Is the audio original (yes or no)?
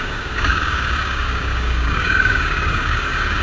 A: no